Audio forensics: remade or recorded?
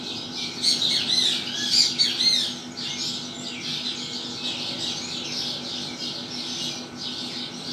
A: recorded